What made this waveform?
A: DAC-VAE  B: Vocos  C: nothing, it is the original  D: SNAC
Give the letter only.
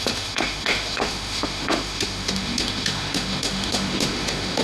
A